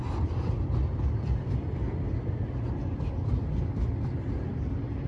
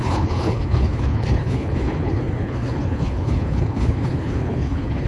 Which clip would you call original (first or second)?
first